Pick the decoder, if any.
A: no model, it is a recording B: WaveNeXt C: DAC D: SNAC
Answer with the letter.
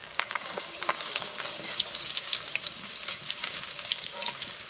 C